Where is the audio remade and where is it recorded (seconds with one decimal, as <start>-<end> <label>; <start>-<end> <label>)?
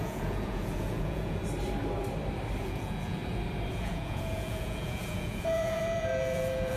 0.0-1.4 remade; 1.4-2.6 recorded; 2.6-3.2 remade; 3.2-3.7 recorded; 3.7-6.8 remade